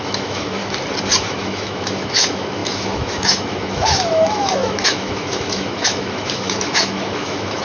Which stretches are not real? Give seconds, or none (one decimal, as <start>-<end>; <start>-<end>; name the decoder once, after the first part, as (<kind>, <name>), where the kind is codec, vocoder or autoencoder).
0.0-0.6 (autoencoder, DAC-VAE); 1.2-7.6